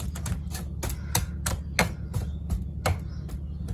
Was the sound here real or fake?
real